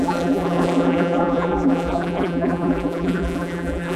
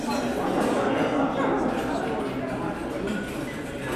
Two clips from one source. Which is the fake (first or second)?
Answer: first